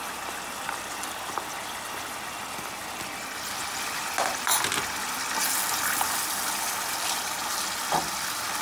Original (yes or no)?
yes